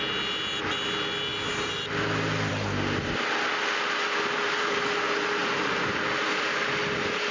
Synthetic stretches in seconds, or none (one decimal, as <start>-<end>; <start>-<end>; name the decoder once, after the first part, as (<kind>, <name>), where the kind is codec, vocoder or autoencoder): none